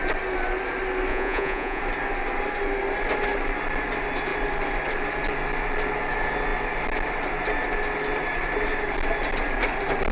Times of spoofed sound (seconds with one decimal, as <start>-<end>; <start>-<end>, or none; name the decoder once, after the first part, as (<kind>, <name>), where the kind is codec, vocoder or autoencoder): 1.1-1.8 (vocoder, Vocos)